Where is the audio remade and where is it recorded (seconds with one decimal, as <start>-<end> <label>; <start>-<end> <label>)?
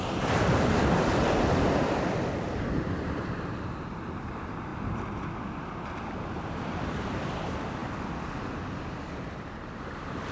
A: 0.0-4.7 remade; 4.7-6.8 recorded; 6.8-7.8 remade; 7.8-9.1 recorded; 9.1-10.3 remade